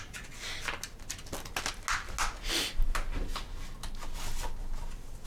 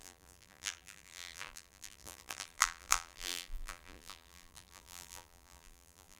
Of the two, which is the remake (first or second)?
second